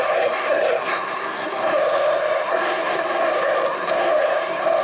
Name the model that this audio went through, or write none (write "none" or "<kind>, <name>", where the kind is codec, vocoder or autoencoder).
codec, SNAC